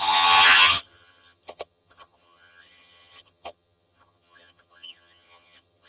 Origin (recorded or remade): remade